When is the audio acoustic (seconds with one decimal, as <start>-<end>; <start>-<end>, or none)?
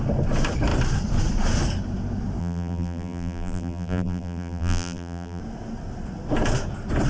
0.0-2.4; 5.4-7.1